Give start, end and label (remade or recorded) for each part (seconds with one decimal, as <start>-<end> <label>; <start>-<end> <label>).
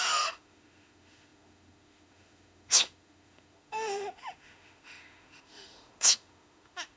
0.0-7.0 remade